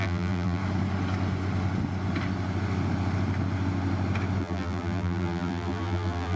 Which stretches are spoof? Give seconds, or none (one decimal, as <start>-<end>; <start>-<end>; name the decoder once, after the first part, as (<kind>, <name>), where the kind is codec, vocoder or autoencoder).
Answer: 0.0-0.6 (vocoder, BigVGAN v2); 4.4-6.4